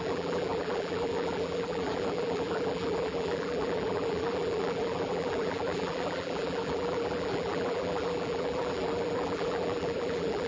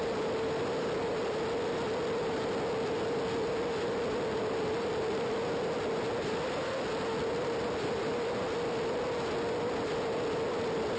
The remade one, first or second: first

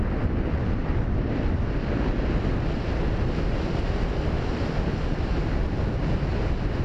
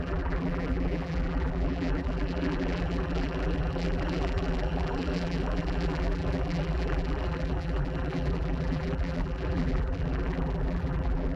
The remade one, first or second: second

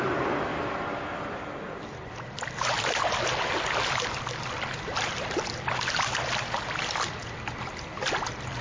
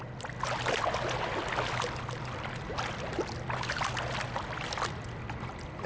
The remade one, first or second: first